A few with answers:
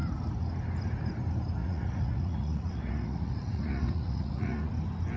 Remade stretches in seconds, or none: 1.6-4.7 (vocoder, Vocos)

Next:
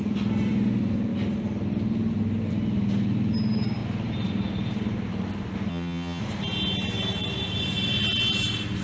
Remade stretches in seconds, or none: 5.7-6.2 (vocoder, HiFi-GAN)

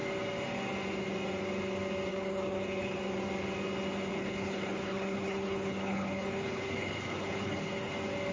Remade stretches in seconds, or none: 2.1-3.0 (codec, HILCodec); 4.1-7.9

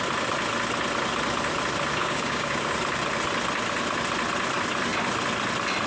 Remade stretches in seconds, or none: 2.0-2.7 (codec, DAC)

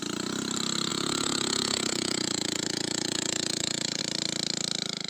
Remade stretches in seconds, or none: 0.9-4.0 (vocoder, Vocos)

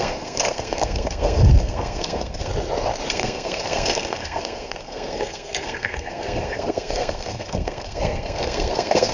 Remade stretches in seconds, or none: 0.0-2.5 (codec, SNAC); 3.1-9.1